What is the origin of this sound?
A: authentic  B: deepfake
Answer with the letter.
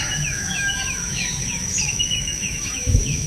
B